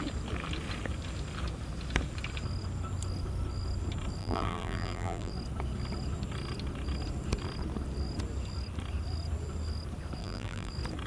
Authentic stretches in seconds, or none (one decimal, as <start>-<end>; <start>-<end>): 0.0-4.2; 5.3-10.2; 10.7-11.1